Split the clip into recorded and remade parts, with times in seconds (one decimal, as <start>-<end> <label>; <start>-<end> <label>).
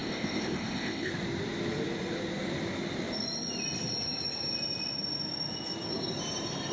0.0-1.1 remade; 1.1-6.7 recorded